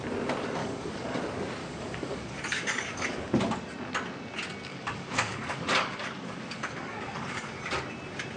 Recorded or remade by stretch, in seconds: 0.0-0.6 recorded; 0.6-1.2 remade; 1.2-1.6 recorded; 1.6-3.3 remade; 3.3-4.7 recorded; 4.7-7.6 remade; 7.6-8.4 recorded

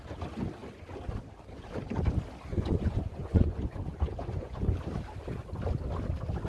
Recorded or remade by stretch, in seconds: 0.0-2.5 recorded; 2.5-4.7 remade; 4.7-6.5 recorded

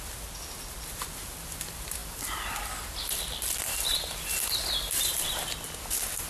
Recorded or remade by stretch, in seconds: 0.0-6.3 recorded

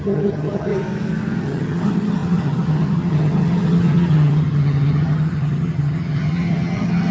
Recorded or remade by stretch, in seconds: 0.0-0.7 remade; 0.7-1.4 recorded; 1.4-7.1 remade

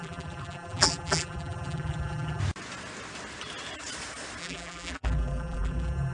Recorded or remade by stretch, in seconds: 0.0-2.4 remade; 2.4-4.4 recorded; 4.4-6.1 remade

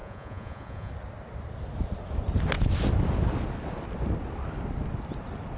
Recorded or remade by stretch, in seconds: 0.0-0.9 remade; 0.9-5.6 recorded

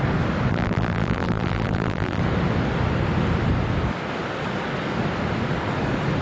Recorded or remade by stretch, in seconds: 0.0-0.5 recorded; 0.5-2.2 remade; 2.2-6.2 recorded